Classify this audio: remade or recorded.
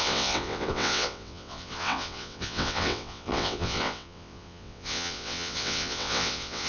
remade